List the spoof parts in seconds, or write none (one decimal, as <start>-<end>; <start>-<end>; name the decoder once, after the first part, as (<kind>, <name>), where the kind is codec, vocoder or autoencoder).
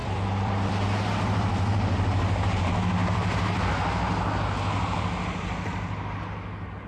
0.0-0.7 (vocoder, BigVGAN v2); 3.0-3.6